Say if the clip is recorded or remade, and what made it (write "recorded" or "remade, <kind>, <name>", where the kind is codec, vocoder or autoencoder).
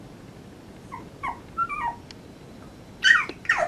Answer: recorded